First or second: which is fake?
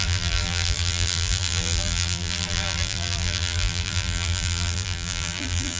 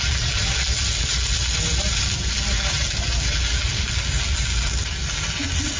first